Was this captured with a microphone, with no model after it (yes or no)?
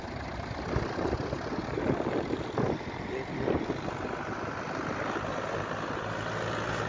yes